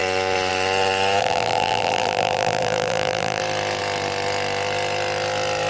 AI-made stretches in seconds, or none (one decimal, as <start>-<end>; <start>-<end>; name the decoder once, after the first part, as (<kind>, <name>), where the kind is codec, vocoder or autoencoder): 1.2-3.4 (vocoder, BigVGAN v2)